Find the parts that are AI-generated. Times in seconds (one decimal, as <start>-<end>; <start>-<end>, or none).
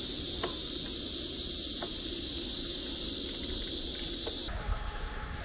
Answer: 4.6-5.4